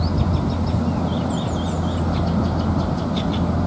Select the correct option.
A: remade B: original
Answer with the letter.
B